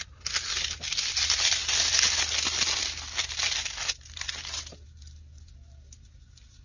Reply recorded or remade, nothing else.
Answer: recorded